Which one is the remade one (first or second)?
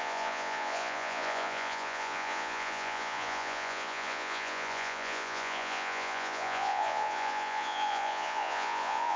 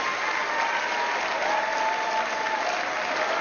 first